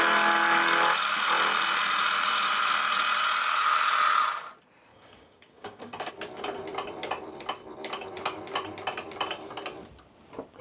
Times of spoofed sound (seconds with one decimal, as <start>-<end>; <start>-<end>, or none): 4.9-6.1